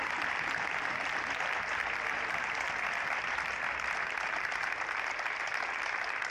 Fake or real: real